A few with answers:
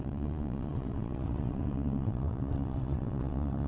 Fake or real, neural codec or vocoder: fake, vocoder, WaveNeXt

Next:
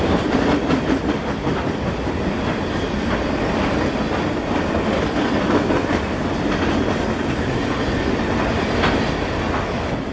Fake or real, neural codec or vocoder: real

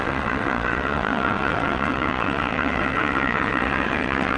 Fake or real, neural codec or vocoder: fake, vocoder, WaveNeXt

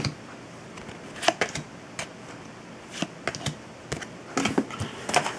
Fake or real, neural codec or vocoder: real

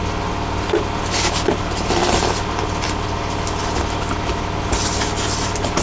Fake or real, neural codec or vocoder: real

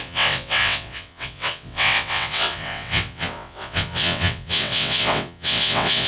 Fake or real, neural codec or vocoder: fake, vocoder, WaveNeXt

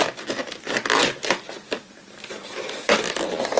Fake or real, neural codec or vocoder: real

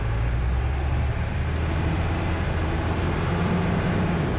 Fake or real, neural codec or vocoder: real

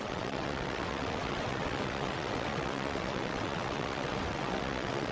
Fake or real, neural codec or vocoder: fake, vocoder, WaveNeXt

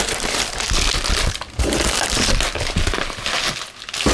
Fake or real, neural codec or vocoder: real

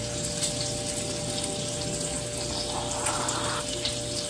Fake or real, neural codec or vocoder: real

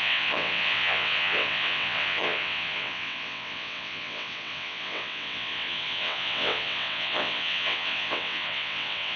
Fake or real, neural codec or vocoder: fake, vocoder, WaveNeXt